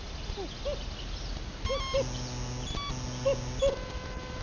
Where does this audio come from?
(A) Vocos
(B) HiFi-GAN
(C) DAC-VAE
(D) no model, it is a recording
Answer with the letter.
D